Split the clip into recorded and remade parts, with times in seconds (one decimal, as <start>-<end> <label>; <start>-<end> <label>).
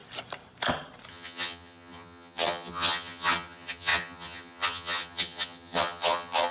0.0-1.1 recorded; 1.1-6.5 remade